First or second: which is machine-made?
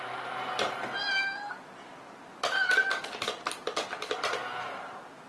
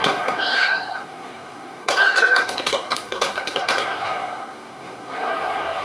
second